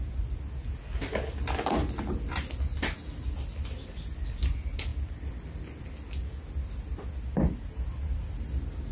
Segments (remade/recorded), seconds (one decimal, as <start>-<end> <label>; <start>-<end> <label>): 0.0-8.9 recorded

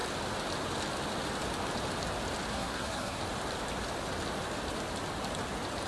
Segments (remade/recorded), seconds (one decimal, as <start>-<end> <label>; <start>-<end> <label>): 0.0-2.5 recorded; 2.5-3.2 remade; 3.2-5.9 recorded

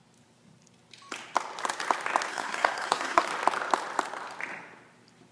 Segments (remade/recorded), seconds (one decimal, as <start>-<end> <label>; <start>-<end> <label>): 0.0-2.3 recorded; 2.3-3.3 remade; 3.3-5.3 recorded

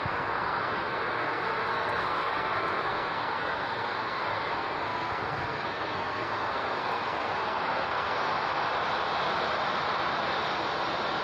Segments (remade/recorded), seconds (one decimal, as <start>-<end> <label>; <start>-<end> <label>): 0.0-8.3 remade; 8.3-11.2 recorded

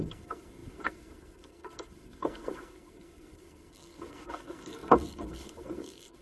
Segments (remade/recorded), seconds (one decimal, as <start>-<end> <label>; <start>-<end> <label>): 0.0-6.2 remade

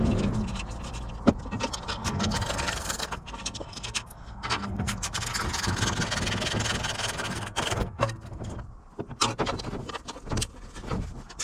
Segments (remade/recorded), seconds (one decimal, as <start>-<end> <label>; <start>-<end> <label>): 0.0-2.0 recorded; 2.0-5.3 remade; 5.3-7.3 recorded; 7.3-8.5 remade; 8.5-11.4 recorded